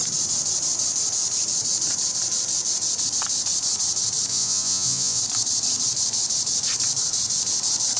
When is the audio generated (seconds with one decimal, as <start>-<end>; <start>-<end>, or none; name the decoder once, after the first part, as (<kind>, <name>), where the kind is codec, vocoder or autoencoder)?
4.3-5.2 (vocoder, Vocos)